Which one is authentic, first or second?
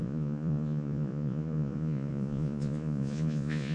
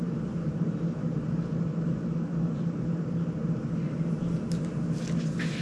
second